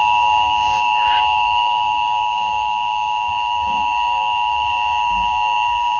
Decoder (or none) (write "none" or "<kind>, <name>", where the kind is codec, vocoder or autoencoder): codec, DAC